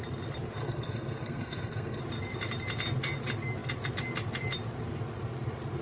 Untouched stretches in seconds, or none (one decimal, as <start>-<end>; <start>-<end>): 0.0-0.6; 2.0-5.8